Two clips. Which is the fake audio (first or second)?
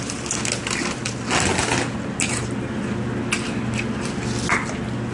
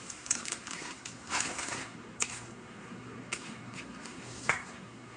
second